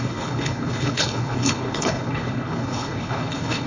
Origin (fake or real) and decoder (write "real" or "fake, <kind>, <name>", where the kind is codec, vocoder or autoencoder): fake, codec, HILCodec